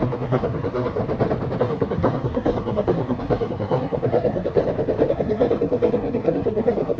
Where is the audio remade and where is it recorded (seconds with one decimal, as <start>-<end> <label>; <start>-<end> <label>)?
0.0-1.0 remade; 1.0-1.6 recorded; 1.6-4.6 remade; 4.6-5.1 recorded; 5.1-7.0 remade